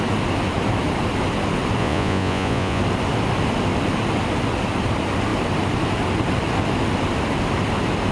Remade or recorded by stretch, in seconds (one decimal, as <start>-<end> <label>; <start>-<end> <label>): 0.0-1.8 recorded; 1.8-2.8 remade; 2.8-8.1 recorded